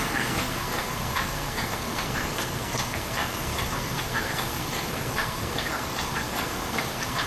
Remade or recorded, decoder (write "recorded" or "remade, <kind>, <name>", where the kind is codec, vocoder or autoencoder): remade, codec, SNAC